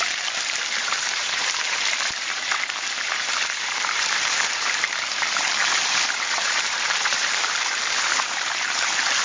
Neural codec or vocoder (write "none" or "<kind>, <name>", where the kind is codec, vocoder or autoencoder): vocoder, BigVGAN v2